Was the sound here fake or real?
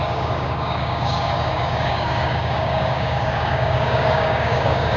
fake